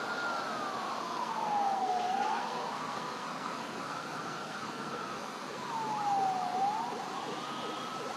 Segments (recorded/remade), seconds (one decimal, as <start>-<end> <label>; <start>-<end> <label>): 0.0-0.9 recorded; 0.9-5.7 remade; 5.7-8.2 recorded